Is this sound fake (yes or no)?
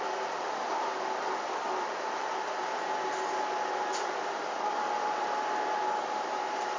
yes